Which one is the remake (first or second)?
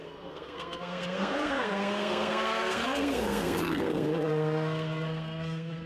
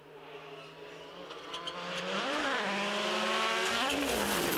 first